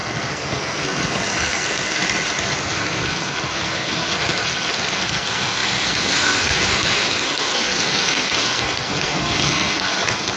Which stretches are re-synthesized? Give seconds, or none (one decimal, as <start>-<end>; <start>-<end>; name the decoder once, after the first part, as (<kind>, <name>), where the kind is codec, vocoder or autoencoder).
0.0-2.0 (codec, SNAC); 2.6-10.4